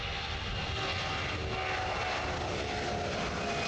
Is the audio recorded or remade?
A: recorded